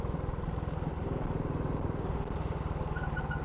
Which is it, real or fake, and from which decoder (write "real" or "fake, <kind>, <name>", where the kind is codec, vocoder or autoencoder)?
real